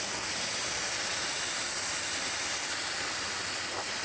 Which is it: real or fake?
real